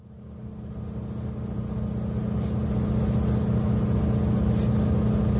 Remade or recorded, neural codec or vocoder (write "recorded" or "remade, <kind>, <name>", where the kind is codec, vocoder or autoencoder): recorded